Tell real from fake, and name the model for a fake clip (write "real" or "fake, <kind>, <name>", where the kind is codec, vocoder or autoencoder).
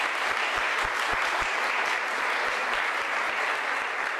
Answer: real